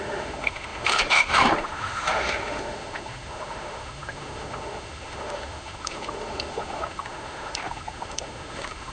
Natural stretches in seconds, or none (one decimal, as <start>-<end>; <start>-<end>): none